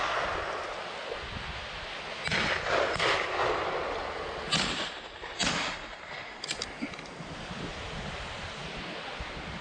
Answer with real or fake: real